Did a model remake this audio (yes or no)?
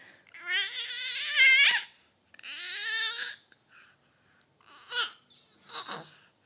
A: no